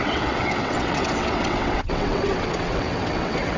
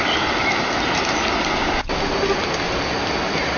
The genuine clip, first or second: second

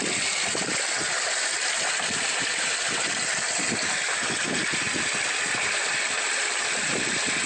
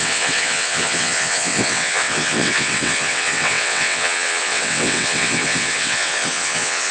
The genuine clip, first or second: first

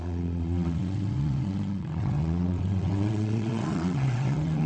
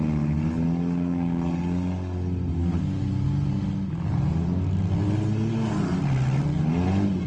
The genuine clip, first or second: second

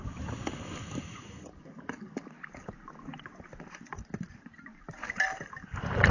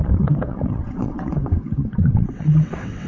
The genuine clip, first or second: first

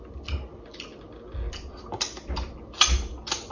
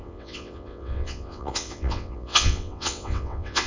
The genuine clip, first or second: first